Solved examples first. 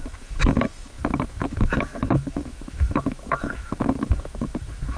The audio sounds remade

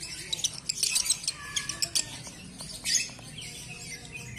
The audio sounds recorded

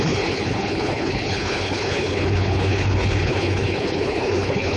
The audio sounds remade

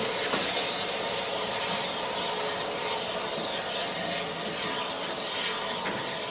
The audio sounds recorded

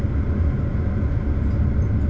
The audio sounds recorded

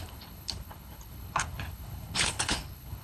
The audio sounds remade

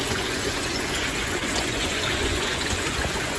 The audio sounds remade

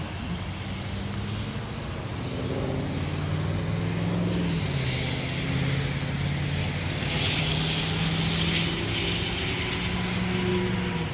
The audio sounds recorded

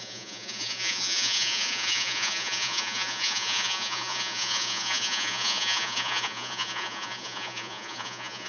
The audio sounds remade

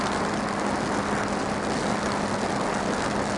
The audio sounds recorded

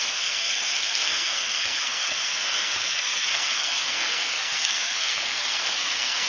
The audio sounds remade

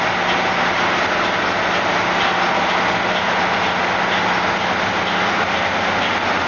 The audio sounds recorded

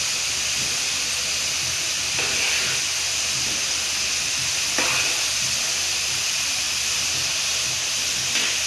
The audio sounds recorded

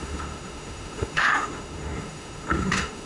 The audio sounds remade